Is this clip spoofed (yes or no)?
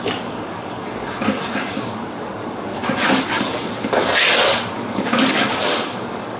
yes